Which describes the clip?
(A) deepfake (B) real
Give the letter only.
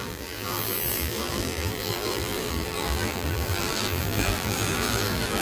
A